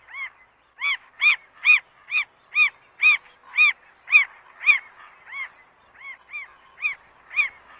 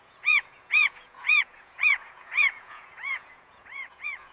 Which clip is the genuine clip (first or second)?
first